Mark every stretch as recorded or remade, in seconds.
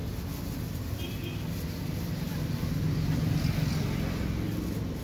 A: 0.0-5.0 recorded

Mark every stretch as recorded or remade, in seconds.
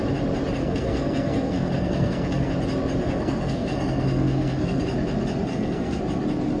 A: 0.0-0.6 recorded; 0.6-2.5 remade; 2.5-3.0 recorded; 3.0-4.8 remade; 4.8-5.5 recorded; 5.5-6.0 remade; 6.0-6.6 recorded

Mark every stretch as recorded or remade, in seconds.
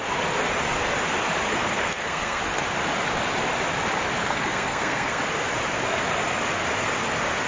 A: 0.0-1.5 recorded; 1.5-2.4 remade; 2.4-4.2 recorded; 4.2-5.2 remade; 5.2-7.5 recorded